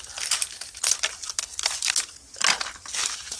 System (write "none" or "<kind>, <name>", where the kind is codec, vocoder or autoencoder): none